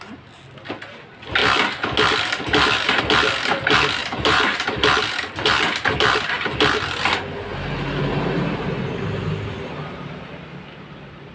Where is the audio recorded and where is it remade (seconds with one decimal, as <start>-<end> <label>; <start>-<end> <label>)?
0.0-4.0 recorded; 4.0-4.6 remade; 4.6-11.3 recorded

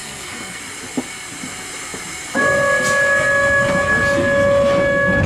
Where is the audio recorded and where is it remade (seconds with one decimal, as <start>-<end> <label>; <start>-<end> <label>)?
0.0-0.6 remade; 0.6-5.3 recorded

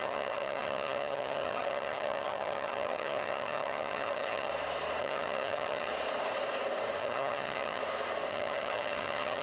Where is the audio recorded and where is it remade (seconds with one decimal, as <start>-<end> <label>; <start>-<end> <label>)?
0.0-4.5 remade; 4.5-5.0 recorded; 5.0-5.9 remade; 5.9-7.0 recorded; 7.0-7.8 remade; 7.8-8.3 recorded; 8.3-9.4 remade

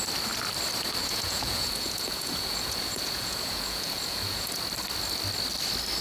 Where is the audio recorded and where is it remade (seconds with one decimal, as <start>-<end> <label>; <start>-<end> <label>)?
0.0-1.0 recorded; 1.0-4.6 remade; 4.6-6.0 recorded

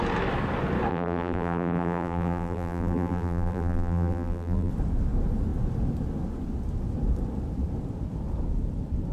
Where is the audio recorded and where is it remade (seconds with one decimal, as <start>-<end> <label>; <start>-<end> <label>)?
0.0-0.9 recorded; 0.9-4.7 remade; 4.7-9.1 recorded

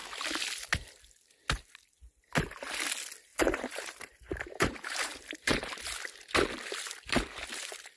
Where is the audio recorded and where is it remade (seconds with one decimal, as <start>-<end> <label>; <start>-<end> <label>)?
0.0-3.3 recorded; 3.3-5.8 remade; 5.8-8.0 recorded

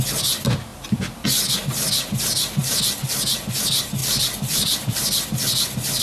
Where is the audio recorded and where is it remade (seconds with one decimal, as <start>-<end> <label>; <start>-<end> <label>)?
0.0-0.7 recorded; 0.7-1.6 remade; 1.6-4.0 recorded; 4.0-6.0 remade